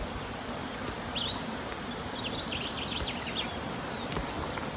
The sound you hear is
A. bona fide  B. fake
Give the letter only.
A